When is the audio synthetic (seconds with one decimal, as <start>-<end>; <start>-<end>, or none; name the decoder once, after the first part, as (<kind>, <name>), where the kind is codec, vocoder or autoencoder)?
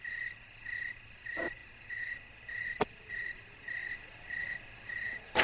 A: none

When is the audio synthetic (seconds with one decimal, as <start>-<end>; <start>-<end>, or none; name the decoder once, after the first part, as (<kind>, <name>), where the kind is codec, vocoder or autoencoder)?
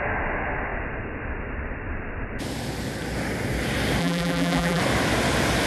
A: 4.0-4.8 (vocoder, BigVGAN v2)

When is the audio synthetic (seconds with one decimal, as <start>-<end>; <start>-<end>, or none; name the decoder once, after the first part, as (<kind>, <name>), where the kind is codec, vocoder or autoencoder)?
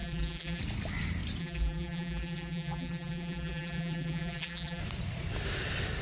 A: 0.0-0.6 (vocoder, BigVGAN v2); 1.4-4.8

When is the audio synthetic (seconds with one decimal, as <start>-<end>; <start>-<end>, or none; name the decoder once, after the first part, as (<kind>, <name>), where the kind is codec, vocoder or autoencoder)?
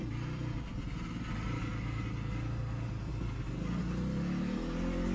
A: none